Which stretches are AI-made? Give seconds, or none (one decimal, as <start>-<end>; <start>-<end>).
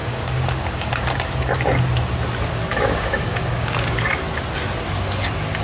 0.0-0.9; 2.7-4.2